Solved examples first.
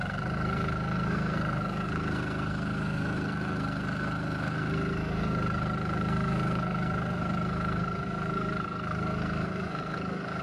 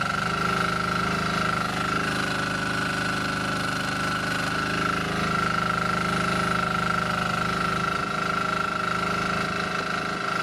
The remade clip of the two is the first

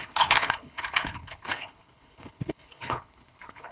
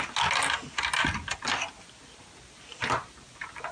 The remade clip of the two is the first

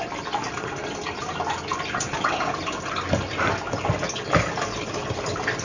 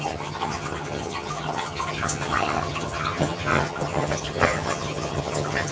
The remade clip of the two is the second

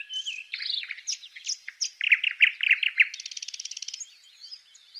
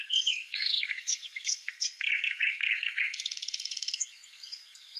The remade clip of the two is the second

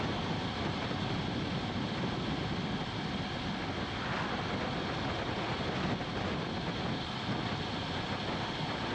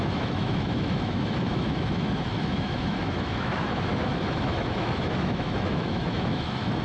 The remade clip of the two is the second